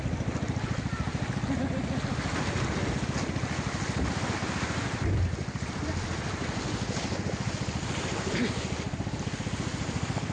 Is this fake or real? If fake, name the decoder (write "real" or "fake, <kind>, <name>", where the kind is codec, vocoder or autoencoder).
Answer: real